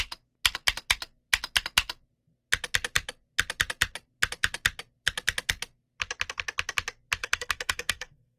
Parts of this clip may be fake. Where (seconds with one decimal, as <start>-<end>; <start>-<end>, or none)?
7.2-8.4